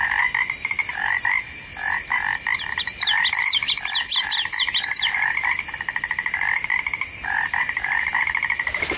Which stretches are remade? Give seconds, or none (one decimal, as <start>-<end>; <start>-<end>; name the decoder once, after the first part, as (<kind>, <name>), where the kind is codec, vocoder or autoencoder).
none